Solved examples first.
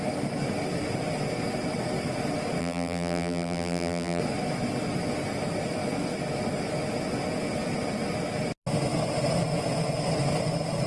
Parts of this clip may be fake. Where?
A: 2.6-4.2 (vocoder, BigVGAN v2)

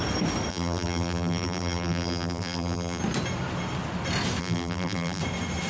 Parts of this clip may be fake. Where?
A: 0.5-3.0 (vocoder, BigVGAN v2); 4.4-5.2